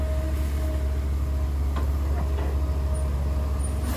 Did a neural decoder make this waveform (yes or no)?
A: no